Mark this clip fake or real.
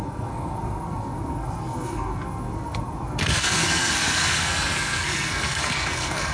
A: fake